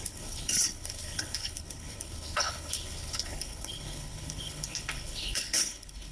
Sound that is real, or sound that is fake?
fake